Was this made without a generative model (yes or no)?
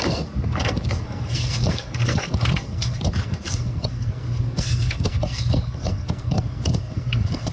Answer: no